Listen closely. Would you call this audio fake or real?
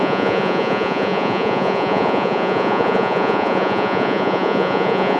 fake